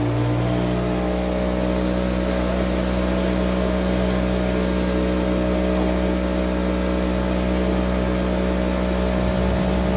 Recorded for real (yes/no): yes